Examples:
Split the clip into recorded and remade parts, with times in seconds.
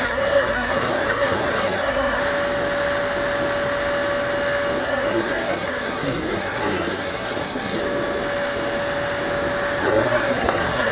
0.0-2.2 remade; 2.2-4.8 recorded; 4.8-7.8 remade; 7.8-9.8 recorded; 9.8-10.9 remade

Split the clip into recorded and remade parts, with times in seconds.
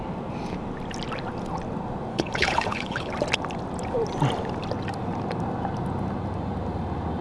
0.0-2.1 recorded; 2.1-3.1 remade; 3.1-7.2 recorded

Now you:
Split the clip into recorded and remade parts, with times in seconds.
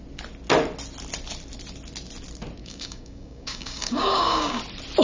0.0-2.6 recorded; 2.6-4.6 remade; 4.6-5.0 recorded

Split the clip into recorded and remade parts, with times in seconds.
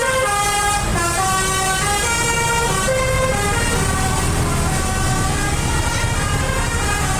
0.0-7.2 recorded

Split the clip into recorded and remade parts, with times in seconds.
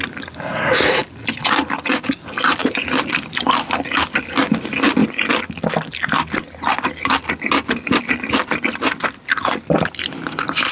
0.0-10.7 recorded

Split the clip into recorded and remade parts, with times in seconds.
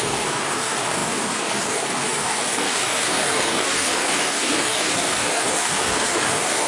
0.0-6.7 remade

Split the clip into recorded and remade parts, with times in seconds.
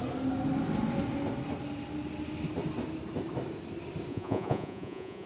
0.0-4.1 recorded; 4.1-5.3 remade